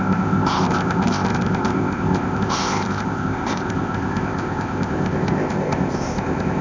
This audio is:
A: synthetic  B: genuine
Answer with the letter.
A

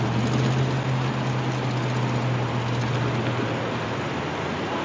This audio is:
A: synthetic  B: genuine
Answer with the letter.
B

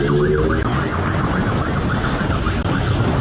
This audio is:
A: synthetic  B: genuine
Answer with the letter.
B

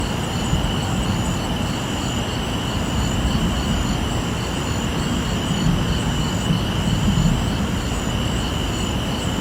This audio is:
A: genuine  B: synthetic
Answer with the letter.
A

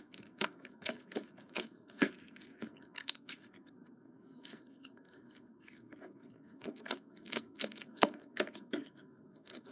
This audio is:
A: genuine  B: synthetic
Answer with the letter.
B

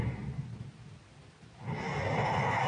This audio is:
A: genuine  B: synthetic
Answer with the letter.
A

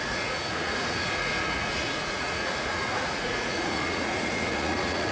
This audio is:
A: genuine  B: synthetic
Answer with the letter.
B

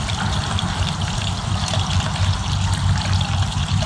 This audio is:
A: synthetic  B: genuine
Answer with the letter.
A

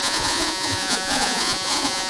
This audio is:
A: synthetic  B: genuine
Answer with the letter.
A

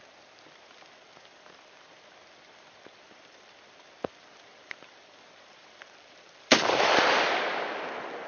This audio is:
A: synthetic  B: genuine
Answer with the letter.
A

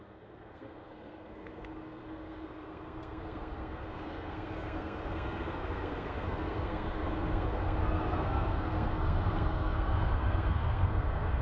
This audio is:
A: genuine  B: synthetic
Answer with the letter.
B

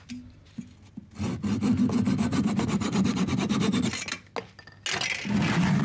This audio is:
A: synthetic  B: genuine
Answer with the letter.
B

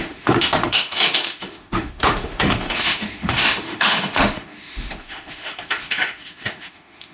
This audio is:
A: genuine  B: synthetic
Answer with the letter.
B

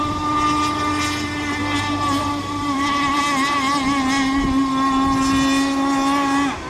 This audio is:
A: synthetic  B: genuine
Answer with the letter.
B